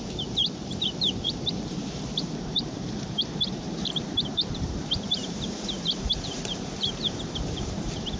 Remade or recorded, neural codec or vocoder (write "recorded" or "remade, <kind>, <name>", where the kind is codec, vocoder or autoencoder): remade, vocoder, BigVGAN v2